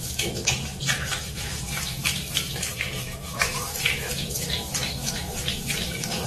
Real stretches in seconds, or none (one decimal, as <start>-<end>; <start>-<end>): none